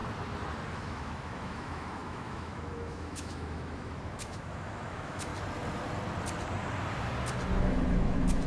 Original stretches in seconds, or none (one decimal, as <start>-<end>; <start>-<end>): 0.0-0.7; 5.3-7.6